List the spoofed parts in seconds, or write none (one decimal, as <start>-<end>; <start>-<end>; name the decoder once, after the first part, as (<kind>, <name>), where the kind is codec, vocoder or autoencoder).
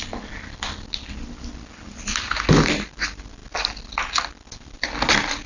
none